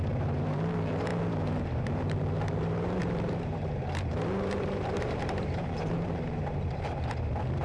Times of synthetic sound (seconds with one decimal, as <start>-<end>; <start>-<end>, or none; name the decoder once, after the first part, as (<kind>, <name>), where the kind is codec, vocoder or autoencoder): 0.0-7.6 (vocoder, BigVGAN v2)

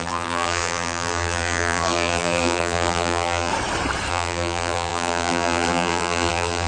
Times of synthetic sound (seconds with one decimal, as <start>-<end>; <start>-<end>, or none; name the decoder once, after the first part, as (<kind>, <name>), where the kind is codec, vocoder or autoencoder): 0.0-3.5 (vocoder, BigVGAN v2); 4.1-6.7

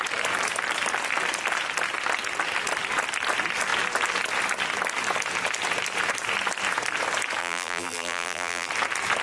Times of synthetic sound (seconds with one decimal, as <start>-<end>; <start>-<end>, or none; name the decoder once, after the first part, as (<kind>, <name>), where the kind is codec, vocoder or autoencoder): 7.4-8.7 (vocoder, BigVGAN v2)

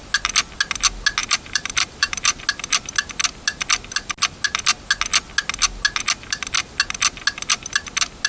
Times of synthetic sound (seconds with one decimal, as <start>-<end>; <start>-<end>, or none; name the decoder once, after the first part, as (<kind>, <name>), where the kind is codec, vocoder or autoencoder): 1.2-2.4 (vocoder, BigVGAN v2)

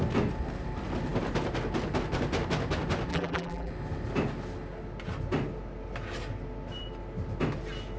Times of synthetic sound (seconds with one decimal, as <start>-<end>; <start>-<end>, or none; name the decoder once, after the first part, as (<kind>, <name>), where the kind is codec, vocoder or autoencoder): 3.1-3.7 (vocoder, BigVGAN v2)